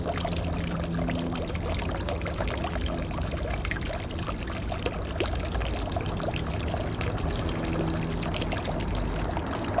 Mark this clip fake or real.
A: real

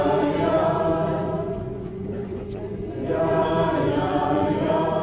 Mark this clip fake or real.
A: fake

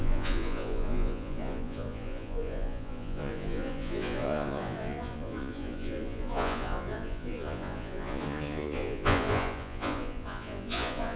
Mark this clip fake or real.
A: fake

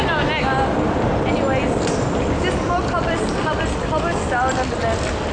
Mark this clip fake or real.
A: real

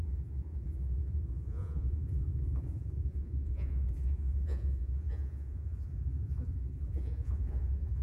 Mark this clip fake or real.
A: fake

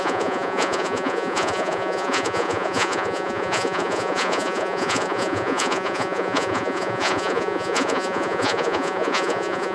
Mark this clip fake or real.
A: fake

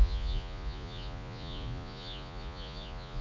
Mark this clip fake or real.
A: fake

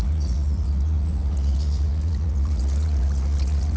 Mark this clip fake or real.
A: fake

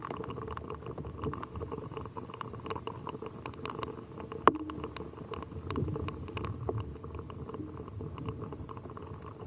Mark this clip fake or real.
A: real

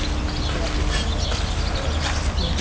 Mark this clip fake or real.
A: real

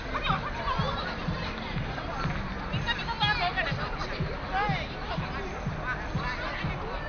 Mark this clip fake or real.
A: real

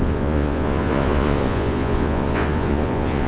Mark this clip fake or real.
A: fake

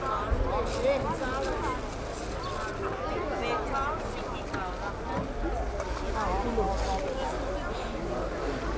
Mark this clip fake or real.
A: real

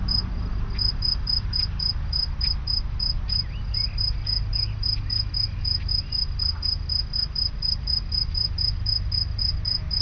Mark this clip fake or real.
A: real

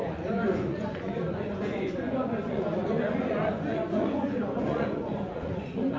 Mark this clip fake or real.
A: fake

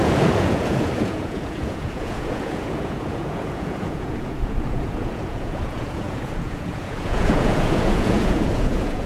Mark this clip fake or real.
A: fake